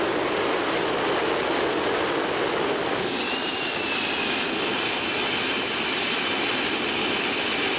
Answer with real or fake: real